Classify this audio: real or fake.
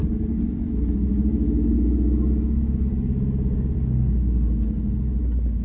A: real